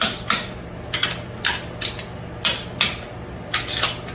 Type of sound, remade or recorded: recorded